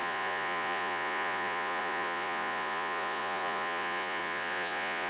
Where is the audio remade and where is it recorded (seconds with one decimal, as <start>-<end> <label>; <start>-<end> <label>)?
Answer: 0.0-5.1 remade